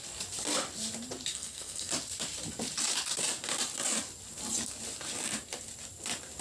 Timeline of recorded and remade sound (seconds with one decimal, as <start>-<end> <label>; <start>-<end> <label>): 0.0-1.3 recorded; 1.3-1.9 remade; 1.9-6.4 recorded